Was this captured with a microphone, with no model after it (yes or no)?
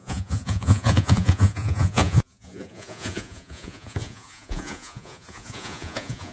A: no